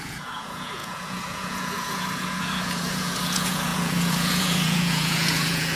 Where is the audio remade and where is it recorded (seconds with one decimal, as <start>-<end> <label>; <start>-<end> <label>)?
0.0-5.8 remade